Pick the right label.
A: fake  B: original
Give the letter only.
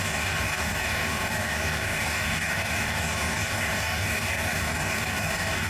A